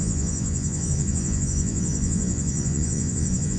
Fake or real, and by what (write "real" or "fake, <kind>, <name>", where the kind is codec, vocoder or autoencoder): fake, vocoder, Vocos